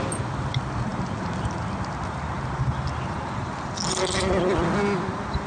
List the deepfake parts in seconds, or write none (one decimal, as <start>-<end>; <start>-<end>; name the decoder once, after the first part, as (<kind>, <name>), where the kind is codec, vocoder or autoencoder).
none